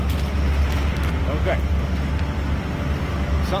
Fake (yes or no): no